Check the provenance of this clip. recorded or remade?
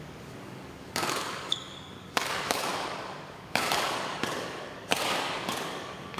remade